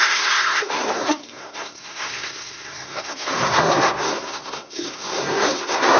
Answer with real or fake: fake